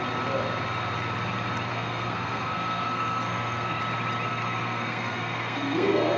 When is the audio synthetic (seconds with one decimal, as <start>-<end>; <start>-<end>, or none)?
1.7-3.8; 4.3-6.2